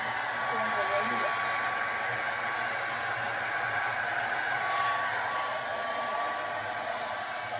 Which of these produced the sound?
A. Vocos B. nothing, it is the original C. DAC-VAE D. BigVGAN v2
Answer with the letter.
B